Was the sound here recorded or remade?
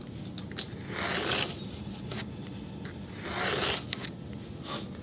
recorded